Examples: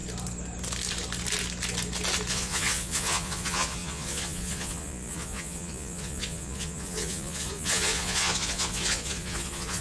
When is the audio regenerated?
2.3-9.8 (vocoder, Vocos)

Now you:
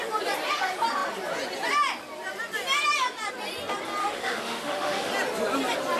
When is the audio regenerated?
4.0-5.1 (autoencoder, DAC-VAE)

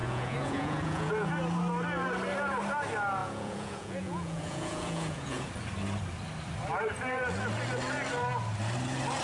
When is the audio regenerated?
0.0-1.3 (vocoder, Vocos); 3.2-5.5